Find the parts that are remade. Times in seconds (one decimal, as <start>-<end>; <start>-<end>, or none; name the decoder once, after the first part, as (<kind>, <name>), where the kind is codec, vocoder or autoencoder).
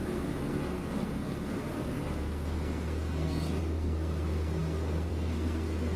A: 0.0-6.0 (codec, SNAC)